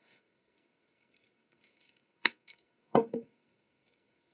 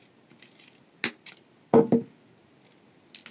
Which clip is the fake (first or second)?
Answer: first